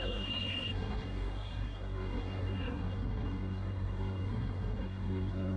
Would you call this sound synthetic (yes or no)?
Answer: yes